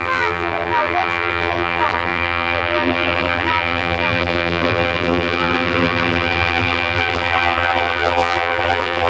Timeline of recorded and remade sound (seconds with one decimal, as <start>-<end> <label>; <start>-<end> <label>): 0.0-9.1 remade